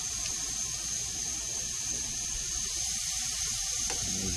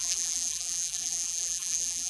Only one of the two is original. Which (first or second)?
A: first